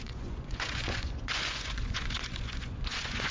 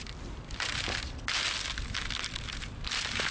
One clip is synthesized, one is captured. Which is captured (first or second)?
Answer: second